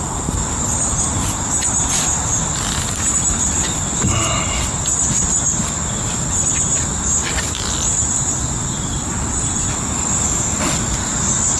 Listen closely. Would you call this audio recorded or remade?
remade